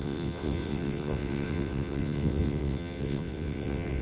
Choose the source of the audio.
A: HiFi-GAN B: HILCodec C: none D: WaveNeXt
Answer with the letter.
D